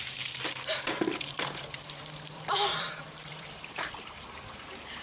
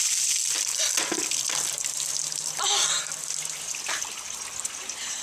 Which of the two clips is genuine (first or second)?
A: second